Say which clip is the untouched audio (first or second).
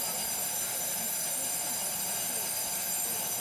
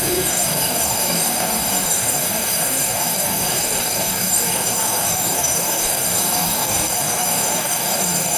first